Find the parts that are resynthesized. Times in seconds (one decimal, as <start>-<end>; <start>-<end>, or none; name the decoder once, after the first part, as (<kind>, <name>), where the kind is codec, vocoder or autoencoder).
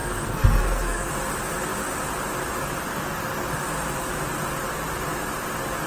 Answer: 0.0-1.1 (codec, SNAC)